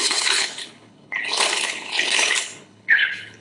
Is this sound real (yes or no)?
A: no